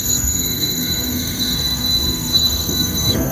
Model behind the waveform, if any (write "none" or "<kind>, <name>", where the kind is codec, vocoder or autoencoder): codec, SNAC